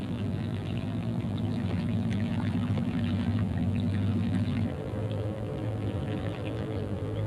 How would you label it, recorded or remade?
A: remade